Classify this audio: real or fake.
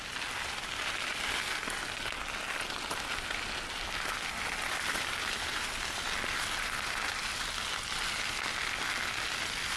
real